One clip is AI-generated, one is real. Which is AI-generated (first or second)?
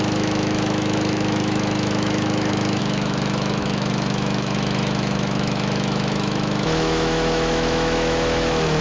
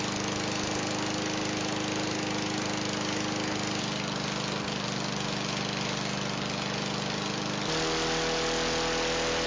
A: first